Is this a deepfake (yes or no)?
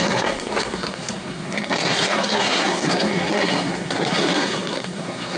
yes